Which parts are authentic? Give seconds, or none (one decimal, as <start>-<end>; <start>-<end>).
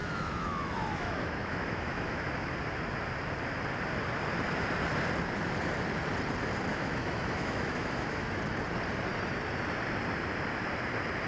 2.3-6.7; 8.4-11.3